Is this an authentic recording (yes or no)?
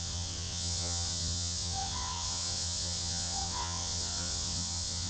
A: no